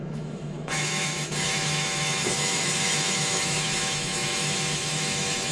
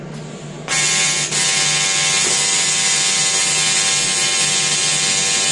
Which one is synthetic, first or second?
first